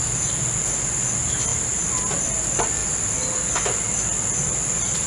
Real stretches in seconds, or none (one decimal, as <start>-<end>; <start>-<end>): 0.0-5.1